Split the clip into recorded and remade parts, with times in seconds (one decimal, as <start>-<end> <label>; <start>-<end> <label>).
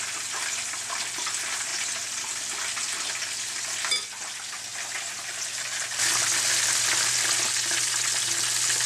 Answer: 0.0-8.9 recorded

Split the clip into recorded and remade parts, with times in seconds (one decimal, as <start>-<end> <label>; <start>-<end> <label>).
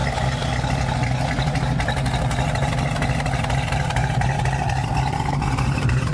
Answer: 0.0-3.7 recorded; 3.7-4.8 remade; 4.8-5.3 recorded; 5.3-6.1 remade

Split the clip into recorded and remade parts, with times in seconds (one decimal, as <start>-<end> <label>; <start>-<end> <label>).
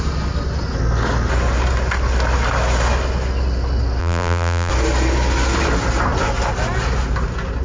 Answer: 0.0-4.0 recorded; 4.0-4.7 remade; 4.7-7.6 recorded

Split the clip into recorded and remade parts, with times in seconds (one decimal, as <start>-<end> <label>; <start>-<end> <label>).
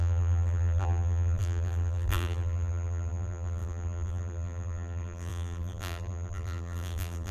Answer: 0.0-7.3 remade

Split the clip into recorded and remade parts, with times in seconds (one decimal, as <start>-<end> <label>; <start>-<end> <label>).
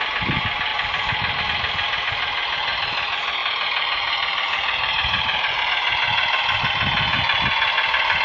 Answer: 0.0-3.4 recorded; 3.4-5.6 remade; 5.6-8.2 recorded